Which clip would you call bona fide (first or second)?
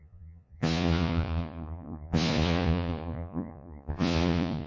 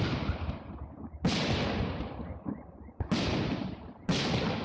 second